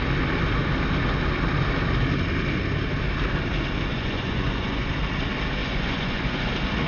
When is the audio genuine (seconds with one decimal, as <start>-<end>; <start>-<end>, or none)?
0.0-3.9; 4.9-5.6; 6.5-6.9